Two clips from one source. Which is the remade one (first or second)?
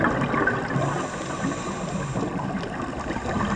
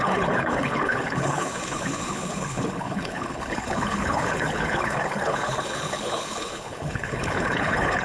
second